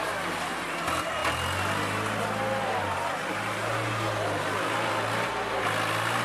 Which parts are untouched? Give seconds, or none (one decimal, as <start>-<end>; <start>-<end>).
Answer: 0.0-6.2